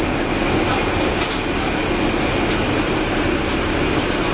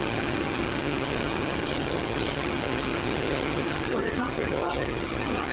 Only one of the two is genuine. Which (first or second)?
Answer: first